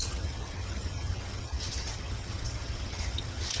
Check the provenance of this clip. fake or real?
fake